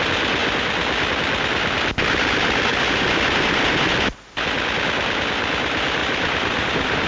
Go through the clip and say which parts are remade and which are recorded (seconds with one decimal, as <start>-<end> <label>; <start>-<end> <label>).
0.0-2.7 recorded; 2.7-3.3 remade; 3.3-6.0 recorded; 6.0-7.1 remade